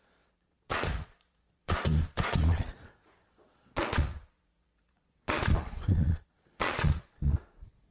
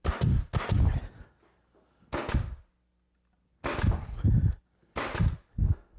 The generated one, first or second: first